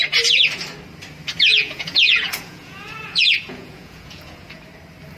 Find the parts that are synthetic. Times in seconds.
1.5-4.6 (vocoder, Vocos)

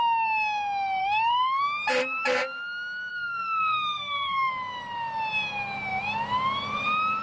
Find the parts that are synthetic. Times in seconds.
1.0-1.6 (codec, SNAC); 3.1-4.5

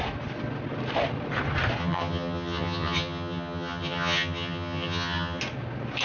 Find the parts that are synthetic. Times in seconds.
1.8-5.4 (vocoder, HiFi-GAN)